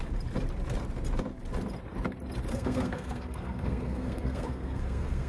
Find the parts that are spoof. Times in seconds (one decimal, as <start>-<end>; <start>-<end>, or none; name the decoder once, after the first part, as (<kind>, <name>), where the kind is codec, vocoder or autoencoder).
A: 2.5-5.3 (codec, SNAC)